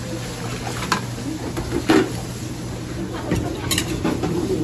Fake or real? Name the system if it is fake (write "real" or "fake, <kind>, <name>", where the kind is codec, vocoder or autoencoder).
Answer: real